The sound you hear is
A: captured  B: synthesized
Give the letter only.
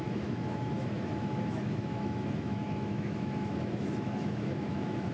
B